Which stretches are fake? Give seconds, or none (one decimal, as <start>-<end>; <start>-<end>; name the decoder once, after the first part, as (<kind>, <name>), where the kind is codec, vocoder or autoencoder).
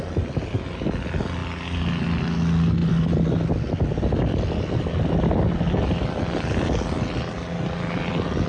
none